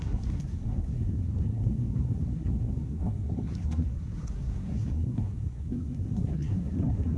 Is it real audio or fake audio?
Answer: fake